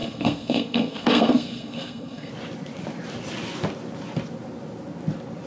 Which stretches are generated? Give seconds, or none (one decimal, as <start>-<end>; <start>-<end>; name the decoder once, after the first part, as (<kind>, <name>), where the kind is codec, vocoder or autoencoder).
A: 0.0-2.3 (codec, SNAC)